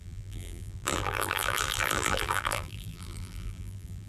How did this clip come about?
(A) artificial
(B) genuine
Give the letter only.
A